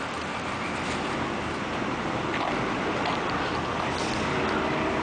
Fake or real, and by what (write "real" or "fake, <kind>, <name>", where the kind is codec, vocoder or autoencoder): real